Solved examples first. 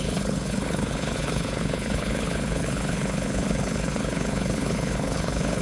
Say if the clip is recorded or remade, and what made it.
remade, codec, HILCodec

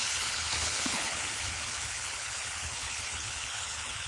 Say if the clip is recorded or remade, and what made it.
remade, codec, HILCodec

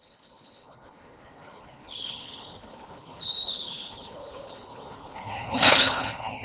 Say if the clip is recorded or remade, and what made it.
remade, codec, HILCodec